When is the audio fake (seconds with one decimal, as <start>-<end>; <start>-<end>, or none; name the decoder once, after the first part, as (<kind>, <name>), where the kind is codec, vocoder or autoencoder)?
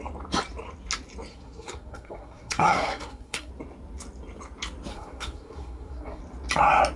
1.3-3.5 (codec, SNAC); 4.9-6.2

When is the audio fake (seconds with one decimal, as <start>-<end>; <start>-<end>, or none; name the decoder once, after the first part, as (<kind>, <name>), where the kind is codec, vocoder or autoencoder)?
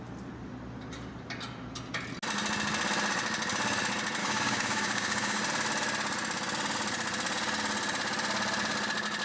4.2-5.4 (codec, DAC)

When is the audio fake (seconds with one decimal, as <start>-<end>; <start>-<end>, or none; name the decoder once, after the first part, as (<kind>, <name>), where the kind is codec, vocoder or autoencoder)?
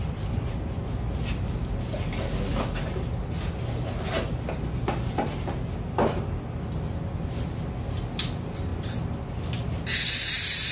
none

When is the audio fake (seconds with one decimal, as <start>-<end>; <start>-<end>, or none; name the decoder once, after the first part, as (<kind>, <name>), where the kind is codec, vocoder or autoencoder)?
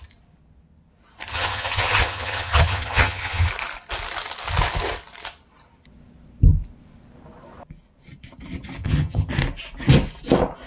1.3-3.5 (vocoder, HiFi-GAN); 8.8-9.3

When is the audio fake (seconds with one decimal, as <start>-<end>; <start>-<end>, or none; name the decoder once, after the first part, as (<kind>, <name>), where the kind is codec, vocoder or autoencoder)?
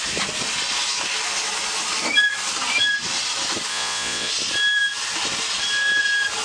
3.7-4.3 (vocoder, Vocos)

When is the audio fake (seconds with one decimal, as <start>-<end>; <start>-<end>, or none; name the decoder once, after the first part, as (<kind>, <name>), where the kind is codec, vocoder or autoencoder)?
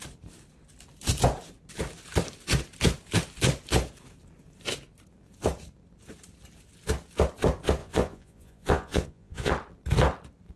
7.8-9.5 (vocoder, Vocos)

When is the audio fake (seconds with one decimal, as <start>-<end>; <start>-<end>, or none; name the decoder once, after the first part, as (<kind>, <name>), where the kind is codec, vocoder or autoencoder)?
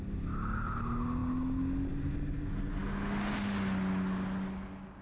none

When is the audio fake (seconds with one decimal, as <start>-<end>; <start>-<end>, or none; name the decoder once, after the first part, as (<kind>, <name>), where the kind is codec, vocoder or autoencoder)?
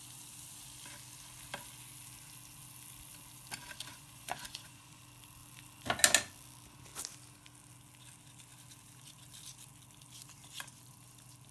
3.9-5.0 (vocoder, Vocos)